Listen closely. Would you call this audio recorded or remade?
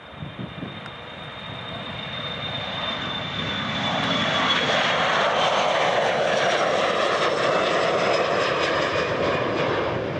recorded